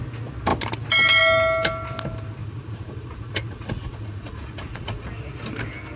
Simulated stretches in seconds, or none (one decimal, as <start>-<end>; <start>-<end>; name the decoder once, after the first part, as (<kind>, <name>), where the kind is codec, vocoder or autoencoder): 2.4-5.1 (vocoder, Vocos)